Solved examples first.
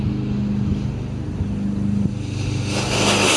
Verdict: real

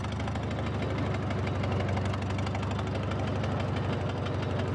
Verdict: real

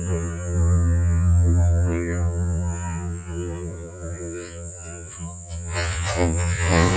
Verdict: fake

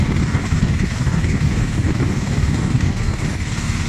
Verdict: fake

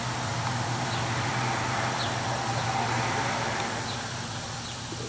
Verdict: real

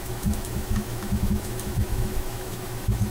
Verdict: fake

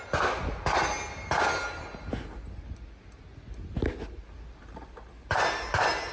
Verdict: real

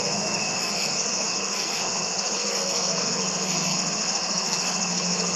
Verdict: fake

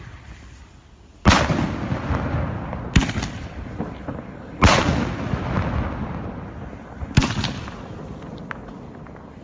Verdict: real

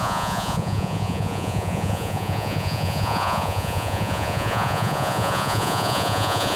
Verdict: fake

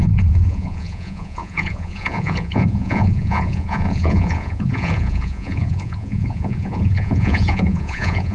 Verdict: fake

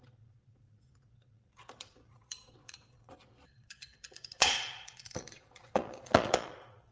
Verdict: fake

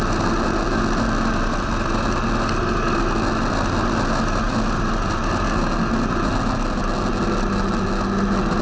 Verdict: real